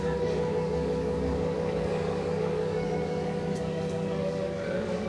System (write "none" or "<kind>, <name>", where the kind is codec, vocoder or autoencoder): codec, DAC